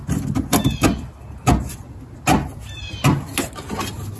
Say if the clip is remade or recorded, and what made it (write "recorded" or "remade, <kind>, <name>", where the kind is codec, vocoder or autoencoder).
recorded